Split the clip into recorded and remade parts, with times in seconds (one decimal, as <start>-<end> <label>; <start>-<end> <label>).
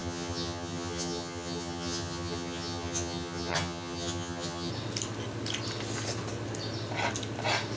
0.0-4.7 remade; 4.7-7.8 recorded